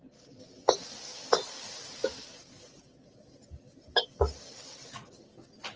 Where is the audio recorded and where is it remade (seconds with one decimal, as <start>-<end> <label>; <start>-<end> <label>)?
0.0-5.8 recorded